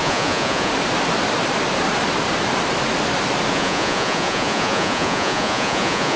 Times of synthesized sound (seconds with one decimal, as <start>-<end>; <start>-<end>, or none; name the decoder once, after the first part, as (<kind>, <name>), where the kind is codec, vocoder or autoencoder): 0.0-0.7 (vocoder, Vocos); 3.5-6.2